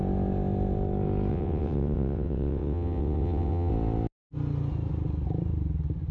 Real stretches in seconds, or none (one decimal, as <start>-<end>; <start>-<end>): 0.0-1.3; 3.7-6.1